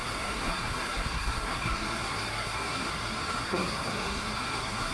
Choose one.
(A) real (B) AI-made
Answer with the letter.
B